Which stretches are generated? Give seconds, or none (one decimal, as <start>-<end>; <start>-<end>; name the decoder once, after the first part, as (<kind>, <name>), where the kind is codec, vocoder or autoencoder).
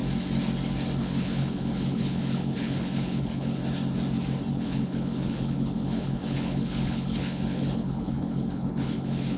1.0-3.6 (codec, HILCodec); 4.5-9.4